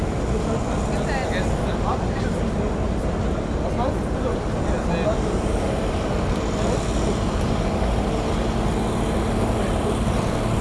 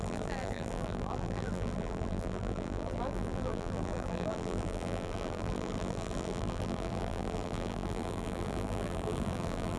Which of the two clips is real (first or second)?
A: first